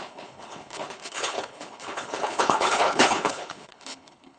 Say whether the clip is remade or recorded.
remade